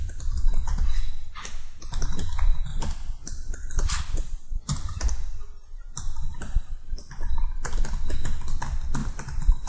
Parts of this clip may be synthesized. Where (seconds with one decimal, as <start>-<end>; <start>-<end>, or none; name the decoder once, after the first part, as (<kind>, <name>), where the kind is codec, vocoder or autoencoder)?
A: 2.7-5.0 (vocoder, BigVGAN v2); 6.3-7.1; 9.0-9.7